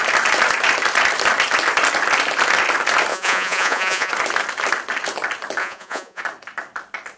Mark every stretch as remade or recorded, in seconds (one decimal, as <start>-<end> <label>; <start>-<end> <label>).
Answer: 0.0-3.1 recorded; 3.1-4.1 remade; 4.1-5.6 recorded; 5.6-6.2 remade; 6.2-7.2 recorded